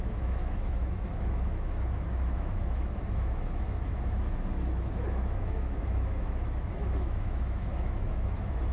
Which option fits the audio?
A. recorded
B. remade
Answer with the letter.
B